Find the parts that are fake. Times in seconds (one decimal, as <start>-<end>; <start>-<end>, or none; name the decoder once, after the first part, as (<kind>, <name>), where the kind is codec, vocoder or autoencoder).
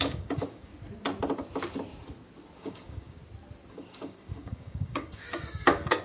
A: 0.0-0.7 (codec, DAC); 2.6-3.2; 3.7-6.0